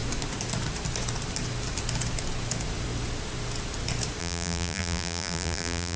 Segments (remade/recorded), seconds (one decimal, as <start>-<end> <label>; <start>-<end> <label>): 0.0-4.2 recorded; 4.2-6.0 remade